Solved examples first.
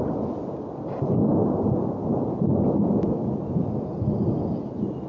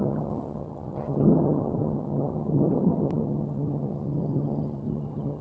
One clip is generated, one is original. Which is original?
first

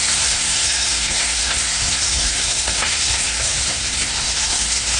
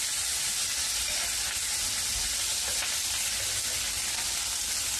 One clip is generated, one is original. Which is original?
second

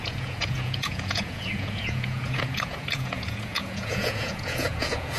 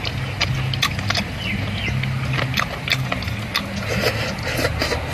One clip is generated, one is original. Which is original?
second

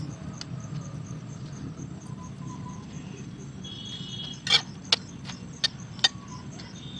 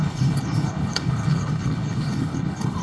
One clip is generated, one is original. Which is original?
first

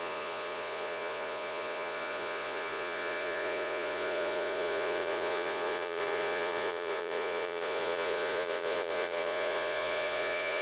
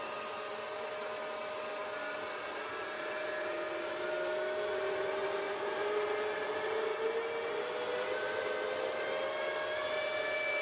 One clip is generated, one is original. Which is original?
second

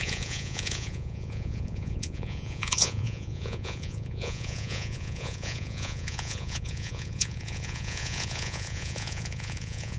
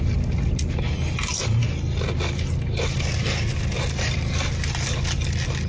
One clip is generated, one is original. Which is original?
second